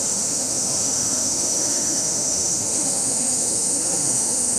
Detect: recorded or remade remade